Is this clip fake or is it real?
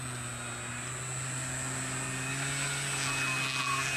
real